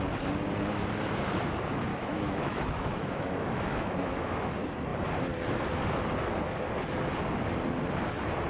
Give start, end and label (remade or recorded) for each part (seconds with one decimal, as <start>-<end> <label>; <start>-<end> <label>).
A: 0.0-1.9 recorded; 1.9-4.5 remade; 4.5-8.5 recorded